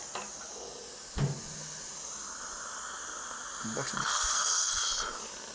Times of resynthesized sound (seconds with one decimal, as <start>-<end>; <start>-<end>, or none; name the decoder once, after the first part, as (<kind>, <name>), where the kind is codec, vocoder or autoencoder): 4.0-4.7 (codec, SNAC)